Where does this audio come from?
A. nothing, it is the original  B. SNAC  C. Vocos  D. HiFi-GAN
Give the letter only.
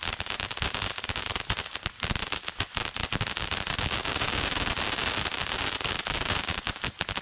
A